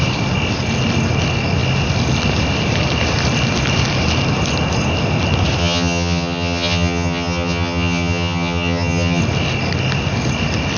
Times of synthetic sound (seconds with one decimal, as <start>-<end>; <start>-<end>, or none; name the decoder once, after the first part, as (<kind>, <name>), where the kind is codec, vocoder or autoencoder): 5.6-9.2 (vocoder, HiFi-GAN)